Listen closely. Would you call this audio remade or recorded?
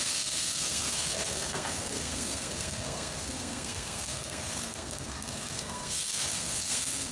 remade